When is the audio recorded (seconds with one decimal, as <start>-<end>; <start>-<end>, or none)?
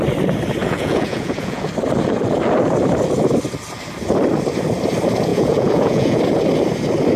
0.0-0.6; 1.7-5.3; 6.2-7.2